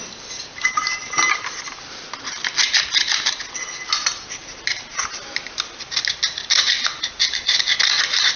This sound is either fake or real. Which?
real